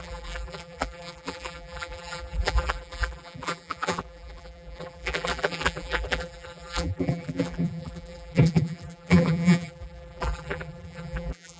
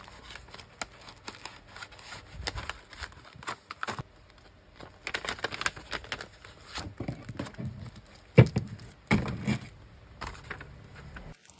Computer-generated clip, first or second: first